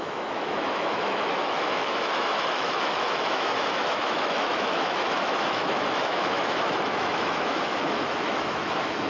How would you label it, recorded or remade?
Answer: remade